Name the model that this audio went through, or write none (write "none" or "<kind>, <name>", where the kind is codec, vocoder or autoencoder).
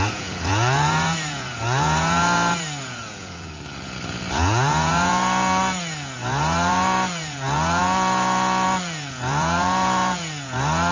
vocoder, Vocos